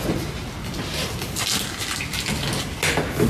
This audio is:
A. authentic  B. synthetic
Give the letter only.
A